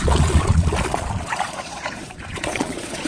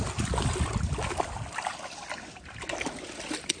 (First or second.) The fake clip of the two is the first